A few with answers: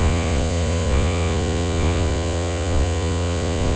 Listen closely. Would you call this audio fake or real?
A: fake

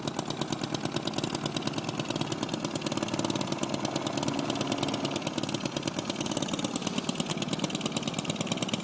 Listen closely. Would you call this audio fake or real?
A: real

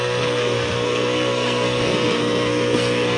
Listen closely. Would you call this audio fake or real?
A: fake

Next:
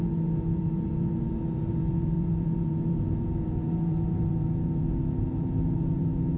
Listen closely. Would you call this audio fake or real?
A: fake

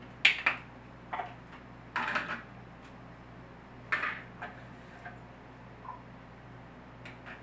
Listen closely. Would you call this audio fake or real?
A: real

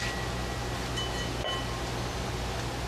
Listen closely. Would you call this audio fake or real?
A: real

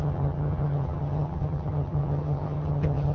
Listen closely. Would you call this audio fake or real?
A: fake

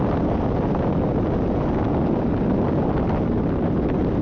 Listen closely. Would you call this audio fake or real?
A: real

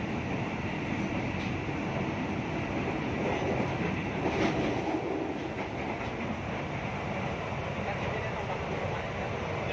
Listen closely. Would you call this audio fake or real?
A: real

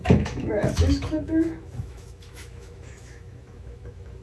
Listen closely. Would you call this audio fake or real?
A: fake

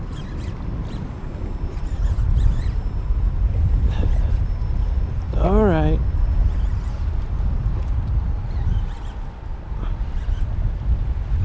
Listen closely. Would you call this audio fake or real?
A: real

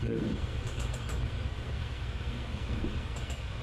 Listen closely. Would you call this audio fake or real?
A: fake